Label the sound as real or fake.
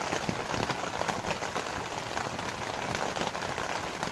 real